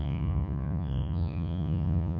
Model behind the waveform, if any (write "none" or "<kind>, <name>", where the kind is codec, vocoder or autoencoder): vocoder, Vocos